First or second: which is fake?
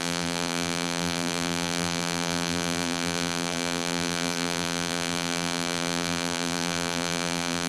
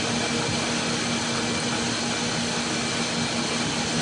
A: first